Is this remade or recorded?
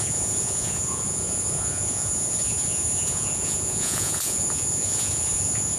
remade